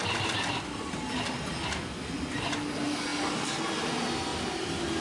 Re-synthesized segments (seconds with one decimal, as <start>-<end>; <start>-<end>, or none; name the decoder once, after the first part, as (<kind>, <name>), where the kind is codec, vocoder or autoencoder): none